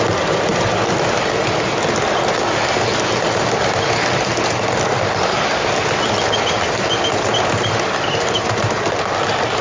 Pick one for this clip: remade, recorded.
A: recorded